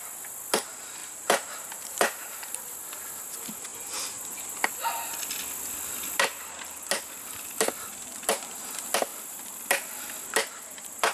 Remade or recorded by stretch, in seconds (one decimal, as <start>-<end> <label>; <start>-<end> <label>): 0.0-1.0 recorded; 1.0-2.6 remade; 2.6-11.1 recorded